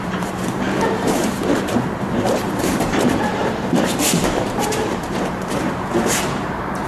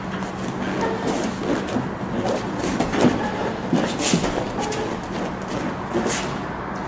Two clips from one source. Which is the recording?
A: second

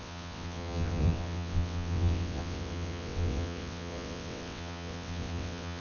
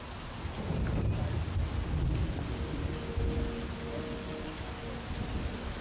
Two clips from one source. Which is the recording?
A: second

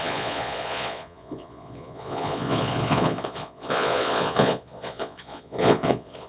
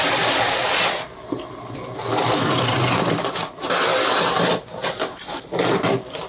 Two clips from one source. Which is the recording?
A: second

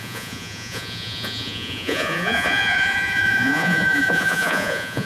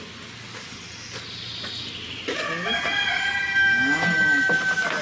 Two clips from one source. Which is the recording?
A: second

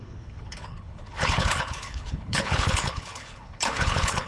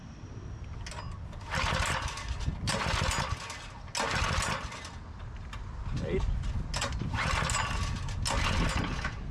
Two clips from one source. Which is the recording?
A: second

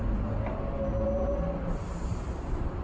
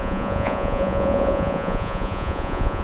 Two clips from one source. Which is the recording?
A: first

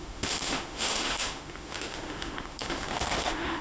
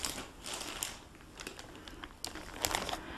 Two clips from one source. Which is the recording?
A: second